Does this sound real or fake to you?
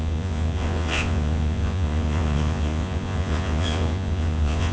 fake